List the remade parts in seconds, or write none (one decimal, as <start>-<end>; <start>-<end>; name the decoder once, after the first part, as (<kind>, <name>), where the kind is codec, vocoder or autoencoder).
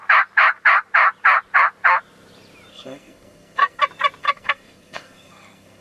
2.7-3.8 (codec, SNAC); 4.2-5.8